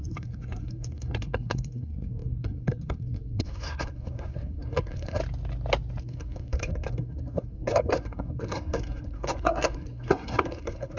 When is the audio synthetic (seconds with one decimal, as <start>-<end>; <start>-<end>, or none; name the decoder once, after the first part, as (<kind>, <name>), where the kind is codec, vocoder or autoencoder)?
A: 0.0-5.2 (codec, SNAC); 6.0-11.0